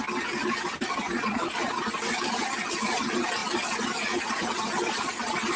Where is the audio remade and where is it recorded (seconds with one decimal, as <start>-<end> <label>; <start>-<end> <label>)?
0.0-1.1 recorded; 1.1-1.7 remade; 1.7-5.6 recorded

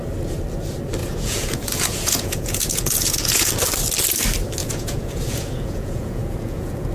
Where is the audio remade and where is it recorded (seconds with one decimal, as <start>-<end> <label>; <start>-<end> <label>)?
0.0-1.0 recorded; 1.0-3.5 remade; 3.5-4.6 recorded; 4.6-6.9 remade

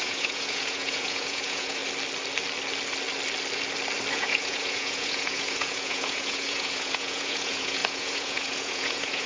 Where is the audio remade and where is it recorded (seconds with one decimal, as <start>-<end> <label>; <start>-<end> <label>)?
0.0-1.8 remade; 1.8-4.1 recorded; 4.1-9.3 remade

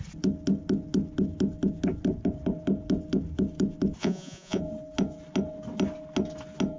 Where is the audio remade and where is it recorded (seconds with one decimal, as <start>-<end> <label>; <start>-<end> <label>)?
0.0-4.0 recorded; 4.0-4.6 remade; 4.6-6.8 recorded

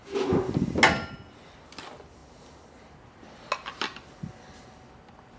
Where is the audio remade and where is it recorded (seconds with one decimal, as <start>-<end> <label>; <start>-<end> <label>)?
0.0-5.4 recorded